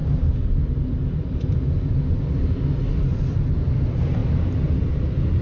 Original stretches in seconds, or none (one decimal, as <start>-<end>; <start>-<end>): none